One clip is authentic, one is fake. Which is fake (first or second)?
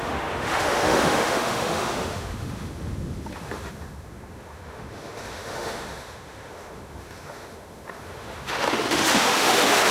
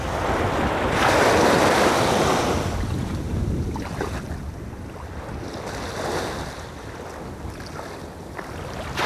first